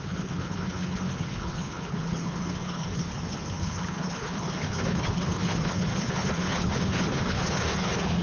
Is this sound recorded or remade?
remade